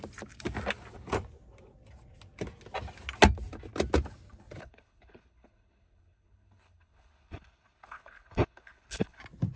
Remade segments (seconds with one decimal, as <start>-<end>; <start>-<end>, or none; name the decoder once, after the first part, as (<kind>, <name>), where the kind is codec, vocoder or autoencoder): 4.6-9.2 (codec, HILCodec)